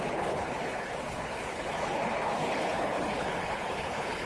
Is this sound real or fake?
fake